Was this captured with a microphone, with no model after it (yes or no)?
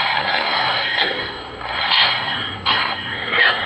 no